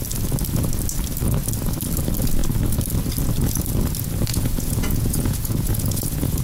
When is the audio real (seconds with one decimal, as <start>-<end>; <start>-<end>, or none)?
0.0-4.3